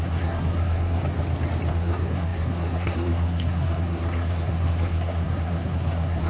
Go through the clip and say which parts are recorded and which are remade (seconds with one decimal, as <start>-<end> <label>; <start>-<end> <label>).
0.0-1.0 remade; 1.0-1.7 recorded; 1.7-6.3 remade